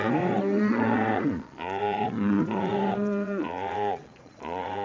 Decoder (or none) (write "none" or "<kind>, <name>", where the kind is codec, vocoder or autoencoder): vocoder, Vocos